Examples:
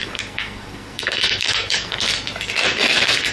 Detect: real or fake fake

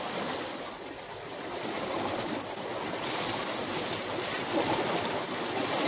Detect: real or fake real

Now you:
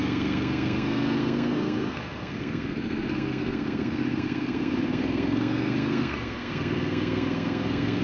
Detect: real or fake fake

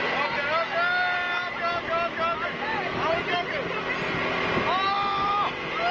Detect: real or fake real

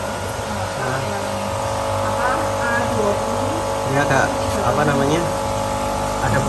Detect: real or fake real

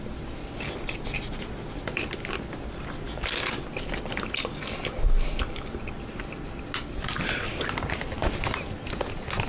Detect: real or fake real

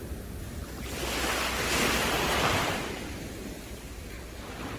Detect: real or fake real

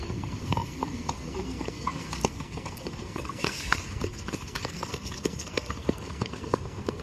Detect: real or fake fake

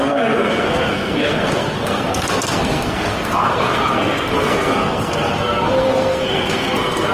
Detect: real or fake fake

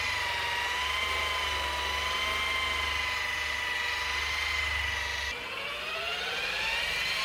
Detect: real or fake real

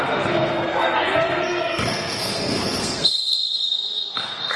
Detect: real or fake fake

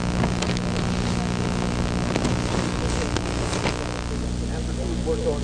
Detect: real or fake real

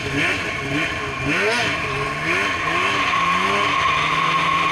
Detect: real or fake real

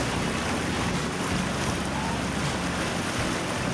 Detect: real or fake real